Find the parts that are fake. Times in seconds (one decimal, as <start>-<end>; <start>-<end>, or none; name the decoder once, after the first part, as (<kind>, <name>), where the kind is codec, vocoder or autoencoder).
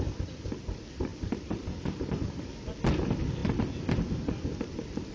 1.1-2.5 (vocoder, BigVGAN v2)